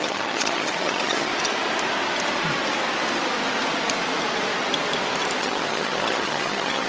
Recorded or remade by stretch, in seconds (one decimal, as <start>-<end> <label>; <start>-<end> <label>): 0.0-1.3 remade; 1.3-5.4 recorded; 5.4-6.9 remade